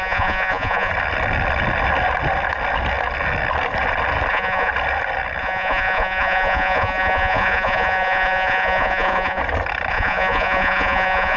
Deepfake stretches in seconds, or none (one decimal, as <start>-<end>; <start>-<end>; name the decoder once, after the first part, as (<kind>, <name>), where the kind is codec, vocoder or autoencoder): 0.0-0.9 (vocoder, Vocos); 4.3-4.7; 5.4-9.4; 9.9-11.4